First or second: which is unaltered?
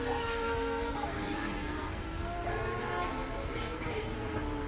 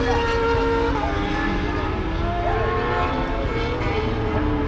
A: second